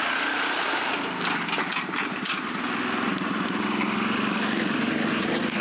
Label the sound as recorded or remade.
recorded